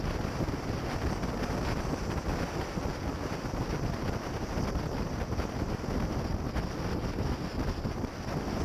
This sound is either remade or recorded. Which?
recorded